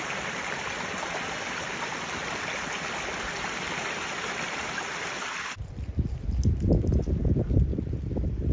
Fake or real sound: real